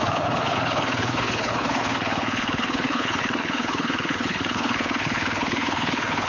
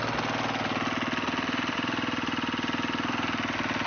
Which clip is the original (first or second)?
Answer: second